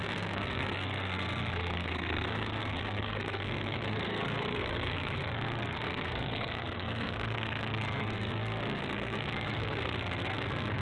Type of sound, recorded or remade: remade